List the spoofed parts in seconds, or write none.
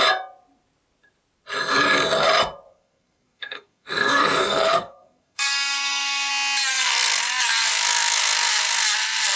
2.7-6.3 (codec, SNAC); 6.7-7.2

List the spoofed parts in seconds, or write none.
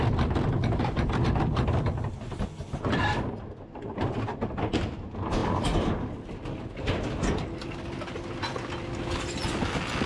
none